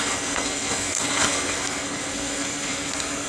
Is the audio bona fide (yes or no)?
no